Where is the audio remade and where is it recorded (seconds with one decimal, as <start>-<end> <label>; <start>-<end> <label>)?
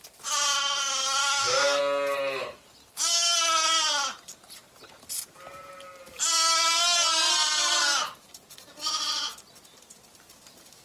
0.0-1.2 recorded; 1.2-1.8 remade; 1.8-10.8 recorded